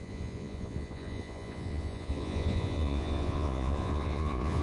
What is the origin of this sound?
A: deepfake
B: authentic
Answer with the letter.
A